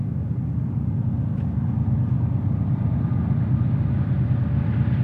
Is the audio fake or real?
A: real